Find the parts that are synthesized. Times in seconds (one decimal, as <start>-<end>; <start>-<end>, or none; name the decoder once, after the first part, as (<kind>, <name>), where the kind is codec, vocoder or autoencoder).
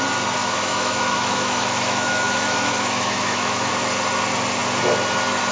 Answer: 0.4-3.7 (autoencoder, DAC-VAE)